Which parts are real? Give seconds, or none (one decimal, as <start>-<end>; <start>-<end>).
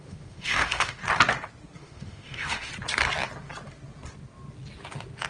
1.0-1.8; 2.7-5.3